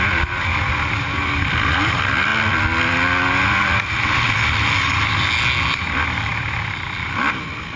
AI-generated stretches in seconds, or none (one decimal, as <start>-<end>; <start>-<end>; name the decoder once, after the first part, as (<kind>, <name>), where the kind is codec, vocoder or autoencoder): none